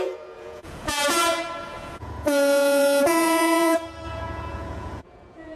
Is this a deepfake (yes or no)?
yes